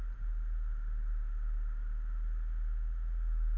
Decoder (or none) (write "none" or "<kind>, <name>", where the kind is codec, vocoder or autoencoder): none